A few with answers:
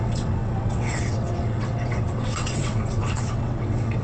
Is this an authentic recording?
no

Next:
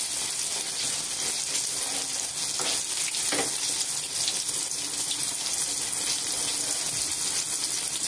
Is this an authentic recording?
yes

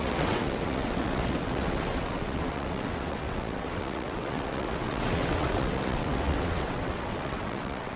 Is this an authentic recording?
no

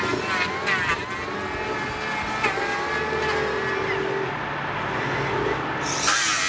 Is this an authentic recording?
yes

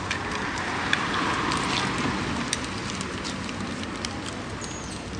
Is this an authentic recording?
yes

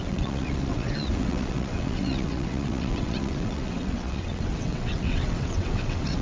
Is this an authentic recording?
no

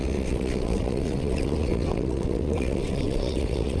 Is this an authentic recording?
no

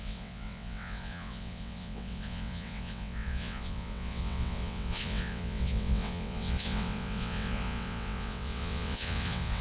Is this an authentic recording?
no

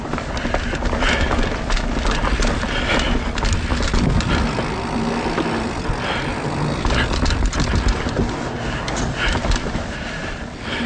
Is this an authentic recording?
yes